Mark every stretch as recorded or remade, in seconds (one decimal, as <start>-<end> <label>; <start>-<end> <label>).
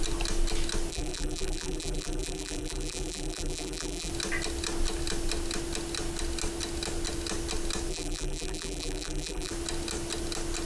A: 0.0-0.9 recorded; 0.9-4.1 remade; 4.1-7.9 recorded; 7.9-9.5 remade; 9.5-10.7 recorded